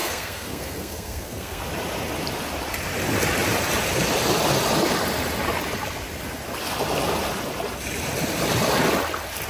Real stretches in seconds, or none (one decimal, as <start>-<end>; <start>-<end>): 1.6-9.5